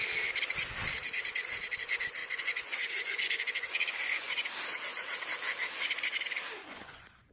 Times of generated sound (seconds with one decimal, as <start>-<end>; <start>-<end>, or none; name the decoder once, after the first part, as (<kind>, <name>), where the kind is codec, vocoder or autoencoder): 2.2-4.5 (vocoder, Vocos); 6.6-7.3